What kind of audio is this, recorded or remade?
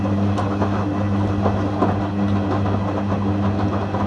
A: recorded